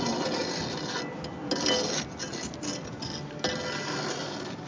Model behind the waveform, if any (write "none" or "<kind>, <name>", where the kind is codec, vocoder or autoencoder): none